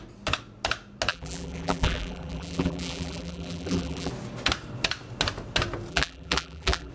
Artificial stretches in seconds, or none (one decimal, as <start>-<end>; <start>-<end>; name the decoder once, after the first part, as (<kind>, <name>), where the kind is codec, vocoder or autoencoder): 1.1-4.1 (vocoder, BigVGAN v2); 5.9-6.9